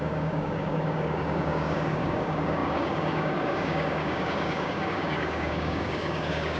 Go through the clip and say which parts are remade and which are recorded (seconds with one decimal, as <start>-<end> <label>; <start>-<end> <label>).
0.0-6.6 remade